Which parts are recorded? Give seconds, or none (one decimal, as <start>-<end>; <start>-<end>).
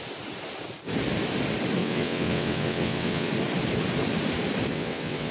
0.0-1.8; 3.3-4.7